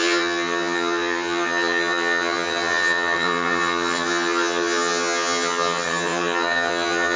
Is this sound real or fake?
fake